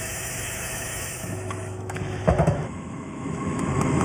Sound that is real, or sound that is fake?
fake